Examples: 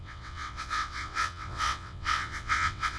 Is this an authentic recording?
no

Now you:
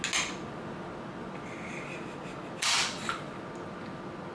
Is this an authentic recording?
yes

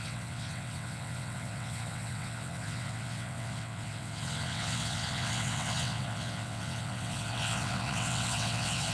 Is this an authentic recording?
no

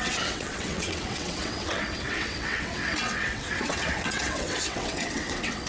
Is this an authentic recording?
no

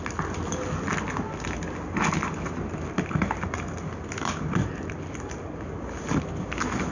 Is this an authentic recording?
yes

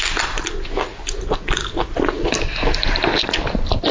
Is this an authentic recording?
yes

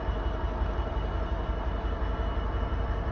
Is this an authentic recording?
yes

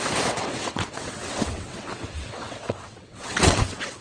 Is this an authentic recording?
no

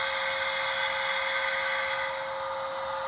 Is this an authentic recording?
yes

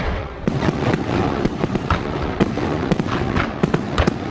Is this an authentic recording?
no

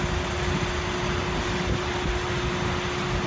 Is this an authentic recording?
yes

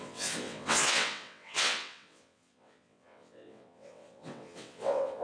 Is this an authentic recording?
no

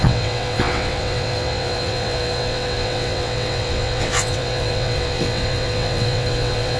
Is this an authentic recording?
no